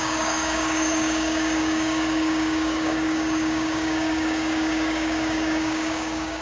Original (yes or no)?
no